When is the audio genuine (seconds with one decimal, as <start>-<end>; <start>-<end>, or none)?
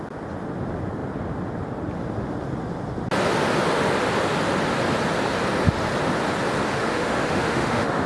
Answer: 0.0-6.7